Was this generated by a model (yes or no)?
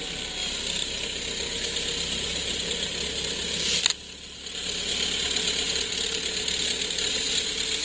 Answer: no